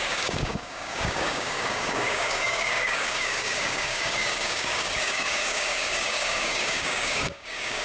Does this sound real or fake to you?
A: fake